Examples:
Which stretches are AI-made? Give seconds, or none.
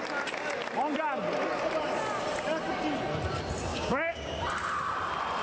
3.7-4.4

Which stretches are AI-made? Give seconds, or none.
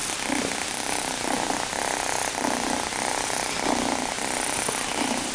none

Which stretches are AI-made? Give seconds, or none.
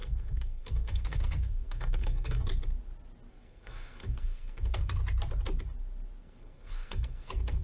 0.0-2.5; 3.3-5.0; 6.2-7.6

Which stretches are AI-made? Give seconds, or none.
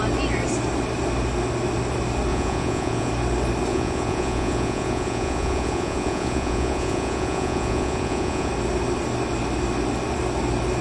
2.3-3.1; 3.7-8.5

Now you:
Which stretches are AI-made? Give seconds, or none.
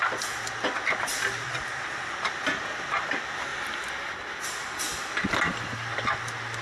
1.1-1.9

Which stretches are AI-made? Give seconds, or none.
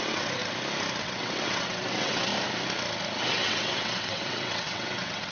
0.0-0.4; 1.0-2.3; 3.3-5.3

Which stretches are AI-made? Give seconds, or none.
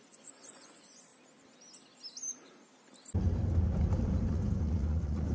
0.0-1.1; 4.3-5.3